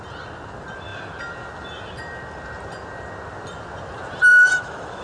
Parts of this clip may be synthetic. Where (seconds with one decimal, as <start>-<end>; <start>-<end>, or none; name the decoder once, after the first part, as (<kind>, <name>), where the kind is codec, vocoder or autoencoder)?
4.3-5.0 (autoencoder, DAC-VAE)